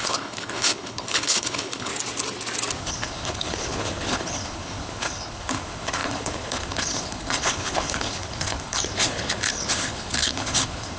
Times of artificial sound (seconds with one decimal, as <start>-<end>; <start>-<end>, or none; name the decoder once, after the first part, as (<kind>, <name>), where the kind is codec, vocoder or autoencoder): 0.0-1.9 (codec, HILCodec); 2.8-11.0